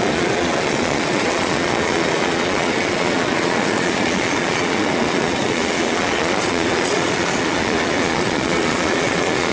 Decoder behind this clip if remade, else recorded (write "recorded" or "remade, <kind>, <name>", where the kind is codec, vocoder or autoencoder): remade, vocoder, Vocos